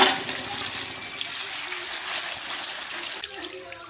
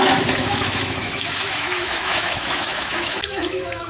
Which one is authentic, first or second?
first